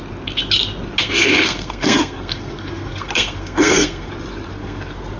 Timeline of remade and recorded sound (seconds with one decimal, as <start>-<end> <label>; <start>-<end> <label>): 0.0-1.0 recorded; 1.0-4.1 remade; 4.1-4.5 recorded; 4.5-5.2 remade